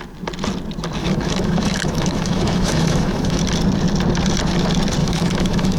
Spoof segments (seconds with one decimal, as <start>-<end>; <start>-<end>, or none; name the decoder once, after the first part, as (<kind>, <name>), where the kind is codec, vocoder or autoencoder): 1.0-3.4 (autoencoder, DAC-VAE); 5.0-5.8